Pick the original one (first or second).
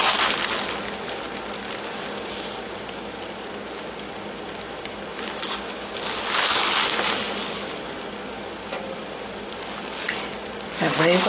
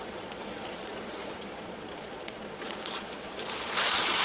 first